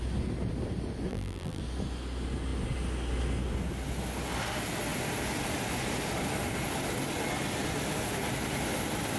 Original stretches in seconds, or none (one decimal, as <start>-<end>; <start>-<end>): 0.0-1.1; 1.6-9.2